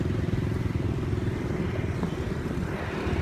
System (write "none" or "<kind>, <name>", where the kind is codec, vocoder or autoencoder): none